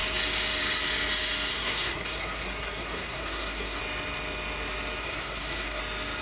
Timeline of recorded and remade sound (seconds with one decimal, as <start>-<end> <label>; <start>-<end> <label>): 0.0-1.5 recorded; 1.5-3.8 remade; 3.8-5.0 recorded; 5.0-5.8 remade; 5.8-6.2 recorded